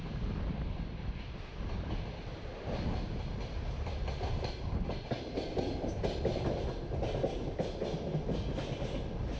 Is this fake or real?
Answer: real